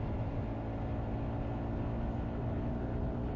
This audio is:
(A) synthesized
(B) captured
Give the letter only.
B